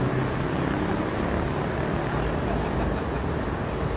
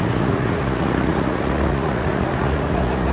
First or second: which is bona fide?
first